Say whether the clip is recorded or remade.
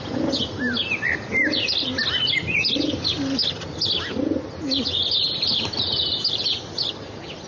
recorded